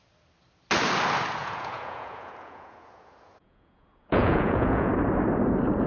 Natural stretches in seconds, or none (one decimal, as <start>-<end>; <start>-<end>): 0.0-1.4; 4.9-5.9